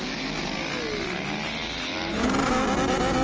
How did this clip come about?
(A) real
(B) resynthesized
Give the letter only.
A